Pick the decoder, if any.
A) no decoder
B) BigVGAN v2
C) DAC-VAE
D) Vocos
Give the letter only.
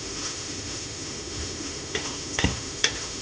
C